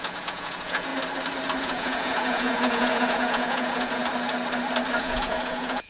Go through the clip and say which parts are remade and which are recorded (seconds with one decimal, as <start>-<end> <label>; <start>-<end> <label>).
0.0-0.9 remade; 0.9-1.6 recorded; 1.6-4.0 remade; 4.0-5.0 recorded; 5.0-5.9 remade